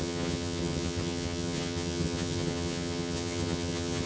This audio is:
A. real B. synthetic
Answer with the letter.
B